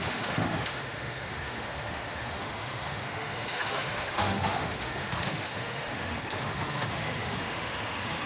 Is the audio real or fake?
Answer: fake